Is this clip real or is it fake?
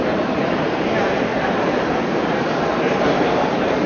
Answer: fake